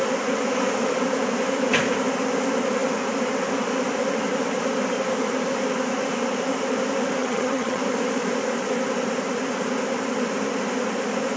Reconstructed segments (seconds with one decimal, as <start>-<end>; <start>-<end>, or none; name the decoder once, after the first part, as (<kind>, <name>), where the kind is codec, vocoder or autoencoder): 7.2-7.8 (vocoder, HiFi-GAN)